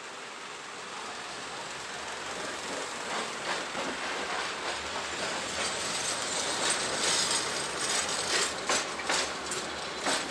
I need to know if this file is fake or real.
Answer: real